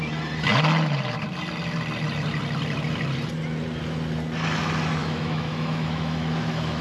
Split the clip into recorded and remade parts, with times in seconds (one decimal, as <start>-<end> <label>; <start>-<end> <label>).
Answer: 0.0-5.0 recorded; 5.0-6.8 remade

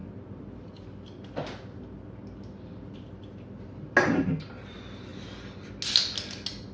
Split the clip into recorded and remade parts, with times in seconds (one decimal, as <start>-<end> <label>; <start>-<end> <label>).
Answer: 0.0-6.7 recorded

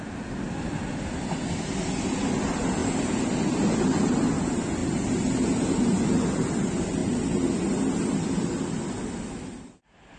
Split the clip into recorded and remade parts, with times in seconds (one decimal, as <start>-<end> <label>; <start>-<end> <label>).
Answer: 0.0-10.2 recorded

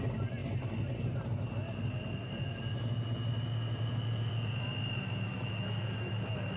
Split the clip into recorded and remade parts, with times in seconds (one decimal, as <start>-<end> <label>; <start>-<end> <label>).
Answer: 0.0-5.3 recorded; 5.3-6.6 remade

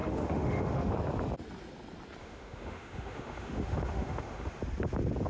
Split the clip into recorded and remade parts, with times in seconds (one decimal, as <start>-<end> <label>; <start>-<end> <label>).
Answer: 0.0-0.9 remade; 0.9-2.2 recorded; 2.2-4.6 remade; 4.6-5.3 recorded

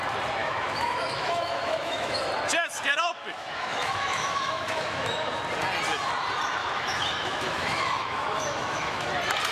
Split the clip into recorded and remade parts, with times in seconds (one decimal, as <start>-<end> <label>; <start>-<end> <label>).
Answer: 0.0-0.4 recorded; 0.4-2.2 remade; 2.2-2.9 recorded; 2.9-5.4 remade; 5.4-6.6 recorded; 6.6-9.1 remade; 9.1-9.5 recorded

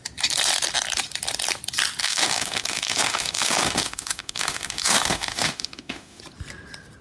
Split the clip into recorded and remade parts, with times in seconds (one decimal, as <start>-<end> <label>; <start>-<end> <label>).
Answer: 0.0-2.0 recorded; 2.0-6.2 remade; 6.2-7.0 recorded

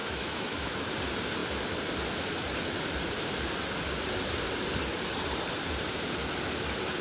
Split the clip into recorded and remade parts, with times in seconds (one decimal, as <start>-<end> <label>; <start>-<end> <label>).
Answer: 0.0-0.9 remade; 0.9-7.0 recorded